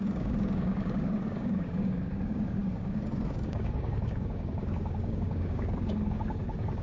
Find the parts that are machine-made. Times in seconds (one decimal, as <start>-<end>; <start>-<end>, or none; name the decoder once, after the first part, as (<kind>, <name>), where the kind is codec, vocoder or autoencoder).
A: 0.0-6.8 (codec, DAC)

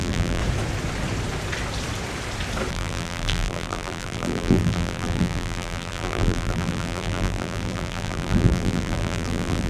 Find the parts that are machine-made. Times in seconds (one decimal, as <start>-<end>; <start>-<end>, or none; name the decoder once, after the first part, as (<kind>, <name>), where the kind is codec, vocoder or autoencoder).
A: 0.0-0.4 (vocoder, BigVGAN v2); 2.7-9.7

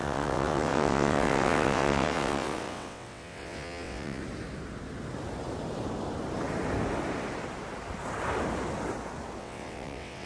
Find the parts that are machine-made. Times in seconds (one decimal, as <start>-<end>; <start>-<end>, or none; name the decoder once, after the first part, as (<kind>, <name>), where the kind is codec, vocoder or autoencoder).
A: 0.0-4.2 (vocoder, WaveNeXt); 9.4-10.3